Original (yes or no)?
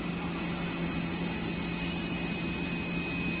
yes